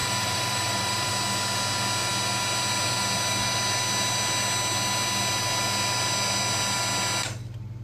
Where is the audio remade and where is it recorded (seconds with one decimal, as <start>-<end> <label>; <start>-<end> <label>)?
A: 0.0-1.1 remade; 1.1-7.8 recorded